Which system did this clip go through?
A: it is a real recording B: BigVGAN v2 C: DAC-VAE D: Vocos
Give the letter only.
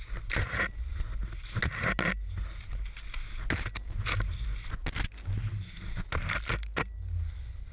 A